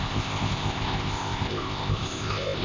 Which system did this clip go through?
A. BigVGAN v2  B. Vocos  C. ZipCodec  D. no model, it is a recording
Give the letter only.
C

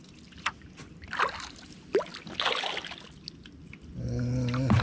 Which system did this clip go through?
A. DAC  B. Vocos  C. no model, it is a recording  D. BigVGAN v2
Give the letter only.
C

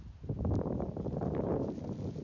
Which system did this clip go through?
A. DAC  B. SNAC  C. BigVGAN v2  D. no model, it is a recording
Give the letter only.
D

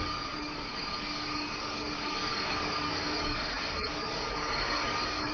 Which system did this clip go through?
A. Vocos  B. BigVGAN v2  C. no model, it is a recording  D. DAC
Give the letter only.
D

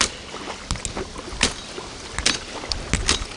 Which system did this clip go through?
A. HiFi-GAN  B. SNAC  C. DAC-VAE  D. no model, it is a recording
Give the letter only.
D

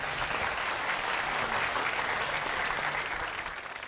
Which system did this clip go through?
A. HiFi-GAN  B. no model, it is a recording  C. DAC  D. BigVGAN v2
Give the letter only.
B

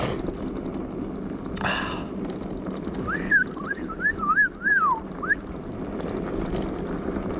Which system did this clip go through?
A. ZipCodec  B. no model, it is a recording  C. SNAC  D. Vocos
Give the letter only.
B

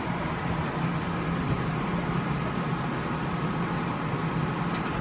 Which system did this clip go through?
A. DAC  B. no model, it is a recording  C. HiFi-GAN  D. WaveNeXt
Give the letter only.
B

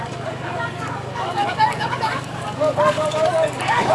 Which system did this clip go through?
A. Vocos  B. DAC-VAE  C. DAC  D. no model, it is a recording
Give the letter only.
C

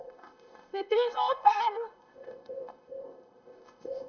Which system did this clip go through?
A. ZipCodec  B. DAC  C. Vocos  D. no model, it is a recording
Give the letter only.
A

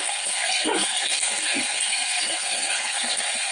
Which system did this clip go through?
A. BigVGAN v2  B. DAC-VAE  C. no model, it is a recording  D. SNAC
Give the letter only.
D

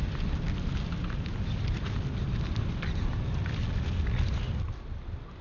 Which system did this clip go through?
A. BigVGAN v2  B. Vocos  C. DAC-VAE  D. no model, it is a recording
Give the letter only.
D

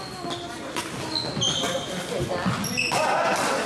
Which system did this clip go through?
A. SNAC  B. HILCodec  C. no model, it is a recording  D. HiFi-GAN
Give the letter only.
C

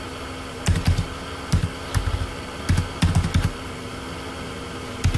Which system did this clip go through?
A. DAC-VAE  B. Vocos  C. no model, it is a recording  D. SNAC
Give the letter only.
C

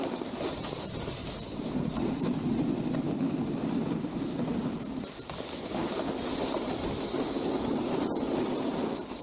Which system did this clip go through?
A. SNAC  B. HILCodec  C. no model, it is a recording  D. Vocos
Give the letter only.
C